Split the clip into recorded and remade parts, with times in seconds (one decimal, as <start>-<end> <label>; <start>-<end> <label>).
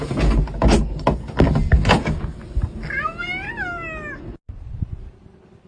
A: 0.0-5.7 recorded